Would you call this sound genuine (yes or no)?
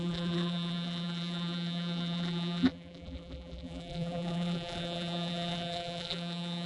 no